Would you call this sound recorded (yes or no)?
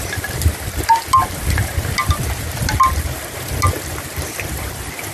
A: yes